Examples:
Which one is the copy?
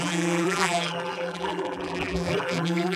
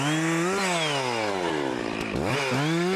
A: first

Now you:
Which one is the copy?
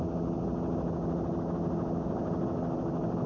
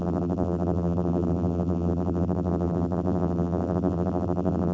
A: second